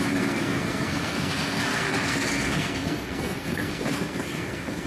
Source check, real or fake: fake